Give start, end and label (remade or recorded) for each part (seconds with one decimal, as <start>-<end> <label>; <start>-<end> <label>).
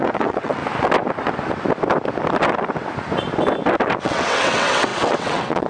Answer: 0.0-0.6 remade; 0.6-4.0 recorded; 4.0-5.7 remade